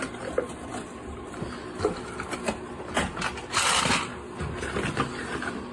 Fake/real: real